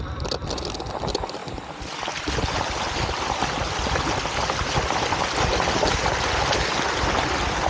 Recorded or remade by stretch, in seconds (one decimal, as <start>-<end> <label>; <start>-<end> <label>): 0.0-7.7 recorded